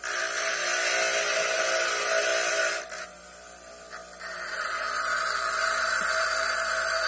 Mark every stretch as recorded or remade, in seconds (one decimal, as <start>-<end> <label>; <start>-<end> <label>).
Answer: 0.0-7.1 recorded